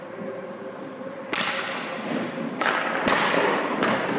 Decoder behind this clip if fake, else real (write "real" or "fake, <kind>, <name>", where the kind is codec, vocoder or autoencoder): real